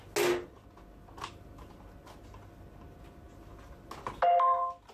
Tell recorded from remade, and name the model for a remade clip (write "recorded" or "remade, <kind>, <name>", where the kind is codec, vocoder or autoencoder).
recorded